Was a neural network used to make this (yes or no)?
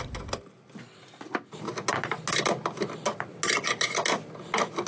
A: no